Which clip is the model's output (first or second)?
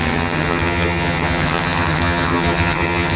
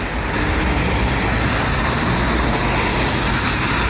first